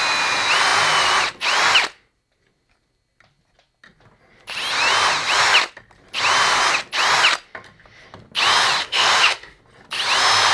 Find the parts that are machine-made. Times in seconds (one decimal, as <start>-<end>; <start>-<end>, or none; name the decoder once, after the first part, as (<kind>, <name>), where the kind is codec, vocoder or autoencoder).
8.8-9.6 (autoencoder, DAC-VAE)